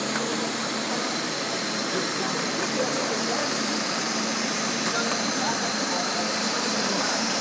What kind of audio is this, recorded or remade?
remade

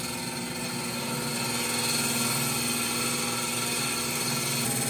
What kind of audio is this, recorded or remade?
recorded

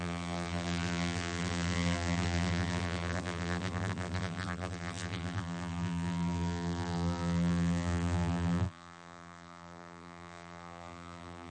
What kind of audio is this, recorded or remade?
remade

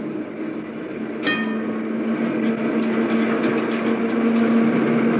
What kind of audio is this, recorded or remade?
recorded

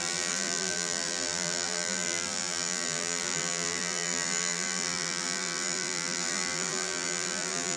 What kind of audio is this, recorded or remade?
remade